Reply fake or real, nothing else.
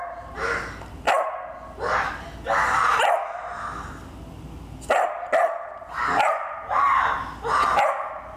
real